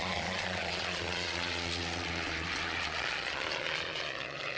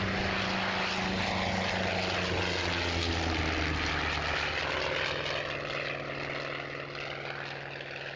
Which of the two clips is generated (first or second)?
first